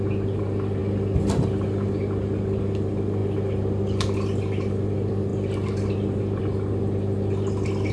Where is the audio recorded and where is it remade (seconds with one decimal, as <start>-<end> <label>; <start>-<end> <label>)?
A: 0.0-7.9 recorded

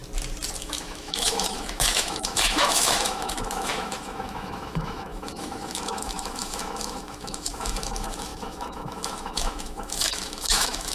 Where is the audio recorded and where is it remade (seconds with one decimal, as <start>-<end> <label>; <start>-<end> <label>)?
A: 0.0-0.6 recorded; 0.6-10.9 remade

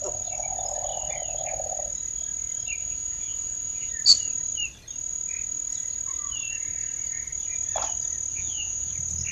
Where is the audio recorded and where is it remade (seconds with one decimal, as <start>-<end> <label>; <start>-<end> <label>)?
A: 0.0-2.8 recorded; 2.8-3.9 remade; 3.9-8.3 recorded; 8.3-8.9 remade; 8.9-9.3 recorded

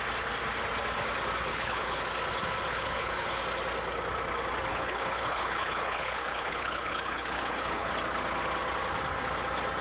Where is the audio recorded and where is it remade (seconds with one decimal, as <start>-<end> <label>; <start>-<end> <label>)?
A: 0.0-1.5 recorded; 1.5-2.0 remade; 2.0-2.7 recorded; 2.7-3.4 remade; 3.4-4.7 recorded; 4.7-7.9 remade; 7.9-9.8 recorded

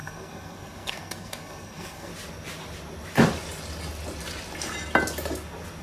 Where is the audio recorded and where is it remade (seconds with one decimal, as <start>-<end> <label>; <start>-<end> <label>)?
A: 0.0-2.1 remade; 2.1-5.8 recorded

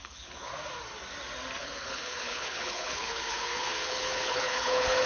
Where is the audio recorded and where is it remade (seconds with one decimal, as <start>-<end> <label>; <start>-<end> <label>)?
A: 0.0-0.5 remade; 0.5-1.6 recorded; 1.6-5.1 remade

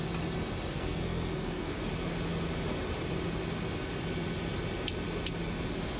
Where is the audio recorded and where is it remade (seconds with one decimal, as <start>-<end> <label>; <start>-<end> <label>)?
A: 0.0-0.7 recorded; 0.7-1.8 remade; 1.8-6.0 recorded

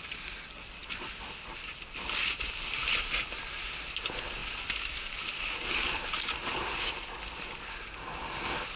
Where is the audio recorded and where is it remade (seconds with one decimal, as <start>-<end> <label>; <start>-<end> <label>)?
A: 0.0-8.8 recorded